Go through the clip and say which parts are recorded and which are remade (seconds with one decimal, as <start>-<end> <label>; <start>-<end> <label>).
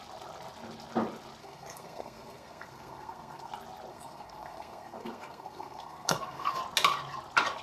0.0-1.4 recorded; 1.4-3.5 remade; 3.5-3.9 recorded; 3.9-6.6 remade; 6.6-7.6 recorded